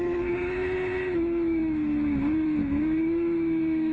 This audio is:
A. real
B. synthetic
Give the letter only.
B